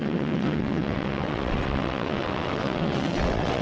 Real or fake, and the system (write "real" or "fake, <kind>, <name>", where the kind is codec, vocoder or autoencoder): fake, vocoder, WaveNeXt